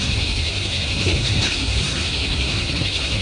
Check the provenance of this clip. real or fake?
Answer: fake